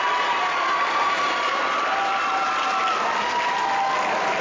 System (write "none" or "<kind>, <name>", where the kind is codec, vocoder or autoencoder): none